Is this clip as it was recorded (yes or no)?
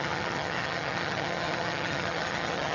no